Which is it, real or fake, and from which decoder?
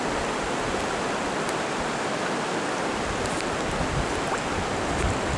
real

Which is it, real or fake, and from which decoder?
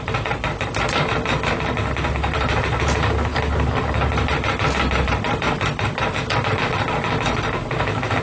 real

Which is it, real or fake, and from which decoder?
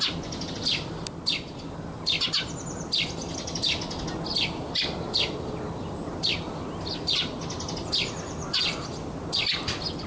real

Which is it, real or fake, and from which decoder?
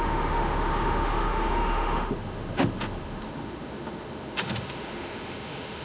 fake, autoencoder, DAC-VAE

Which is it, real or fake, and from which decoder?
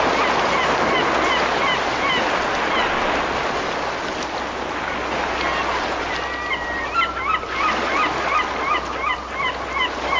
real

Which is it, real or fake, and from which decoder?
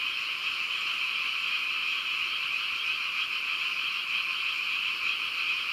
real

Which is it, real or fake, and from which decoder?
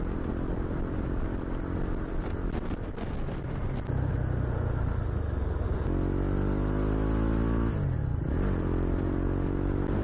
real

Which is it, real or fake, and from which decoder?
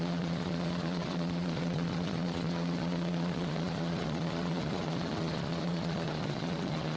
fake, vocoder, Vocos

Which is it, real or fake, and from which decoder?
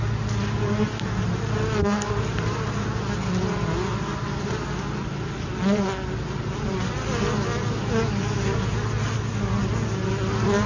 real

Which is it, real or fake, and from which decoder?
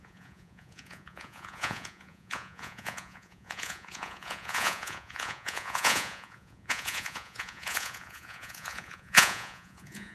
fake, vocoder, Vocos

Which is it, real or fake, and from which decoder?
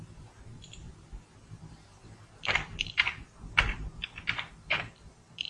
fake, vocoder, BigVGAN v2